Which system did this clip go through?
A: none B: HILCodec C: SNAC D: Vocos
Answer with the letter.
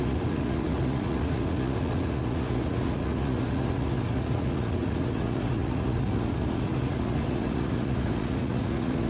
D